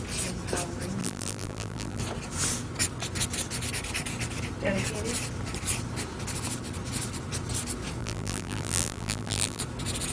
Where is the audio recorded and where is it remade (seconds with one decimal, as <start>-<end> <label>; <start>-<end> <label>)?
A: 0.0-1.0 recorded; 1.0-2.0 remade; 2.0-8.0 recorded; 8.0-9.6 remade; 9.6-10.1 recorded